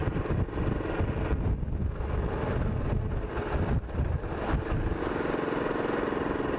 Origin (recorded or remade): recorded